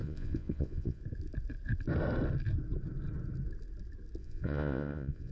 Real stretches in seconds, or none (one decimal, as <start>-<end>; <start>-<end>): 1.0-4.2